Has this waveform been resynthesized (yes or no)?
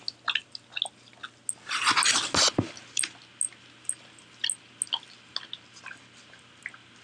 no